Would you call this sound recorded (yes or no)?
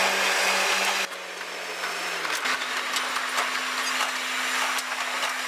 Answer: yes